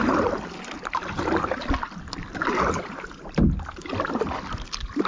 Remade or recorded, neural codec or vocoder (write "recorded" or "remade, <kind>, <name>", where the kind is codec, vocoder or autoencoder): recorded